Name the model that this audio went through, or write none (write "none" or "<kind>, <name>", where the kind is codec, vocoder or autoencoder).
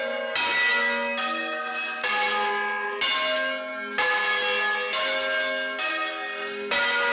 none